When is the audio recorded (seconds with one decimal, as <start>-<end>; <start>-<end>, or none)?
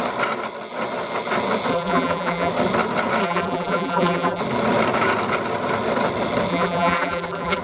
0.0-1.7; 2.5-3.2; 4.4-6.5